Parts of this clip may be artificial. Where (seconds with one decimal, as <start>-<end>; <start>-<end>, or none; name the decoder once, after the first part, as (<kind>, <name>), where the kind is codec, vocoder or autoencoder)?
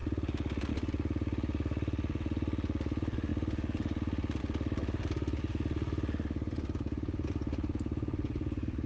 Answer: none